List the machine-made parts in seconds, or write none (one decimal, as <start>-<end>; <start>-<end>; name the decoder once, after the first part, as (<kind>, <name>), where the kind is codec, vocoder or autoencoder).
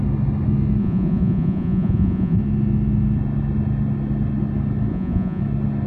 0.8-2.4 (vocoder, Vocos); 4.9-5.4